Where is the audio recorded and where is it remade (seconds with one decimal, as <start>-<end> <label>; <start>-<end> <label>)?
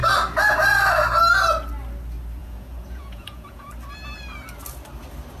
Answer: 0.0-2.4 recorded; 2.4-3.7 remade; 3.7-5.4 recorded